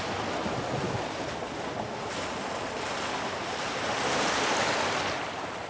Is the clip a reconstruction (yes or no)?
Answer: no